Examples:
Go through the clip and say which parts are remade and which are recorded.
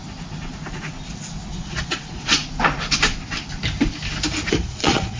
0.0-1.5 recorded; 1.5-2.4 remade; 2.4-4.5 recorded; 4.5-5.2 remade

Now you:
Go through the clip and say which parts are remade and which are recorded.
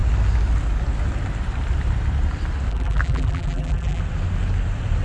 0.0-2.7 recorded; 2.7-4.0 remade; 4.0-5.0 recorded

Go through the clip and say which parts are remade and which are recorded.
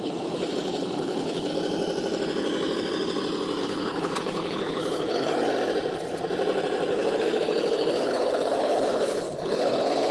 0.0-1.5 remade; 1.5-3.6 recorded; 3.6-5.3 remade; 5.3-6.9 recorded; 6.9-10.1 remade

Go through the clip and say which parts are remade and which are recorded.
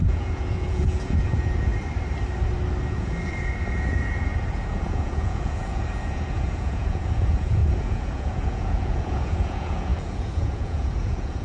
0.0-1.7 remade; 1.7-2.9 recorded; 2.9-11.4 remade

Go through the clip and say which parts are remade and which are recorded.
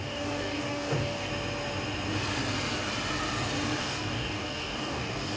0.0-1.3 remade; 1.3-3.8 recorded; 3.8-5.4 remade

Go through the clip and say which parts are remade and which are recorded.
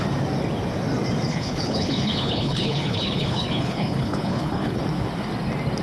0.0-1.3 recorded; 1.3-4.8 remade; 4.8-5.8 recorded